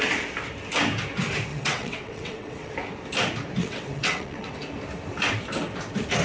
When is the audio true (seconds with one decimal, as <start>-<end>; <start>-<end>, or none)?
0.0-1.5; 2.7-3.6; 4.5-6.2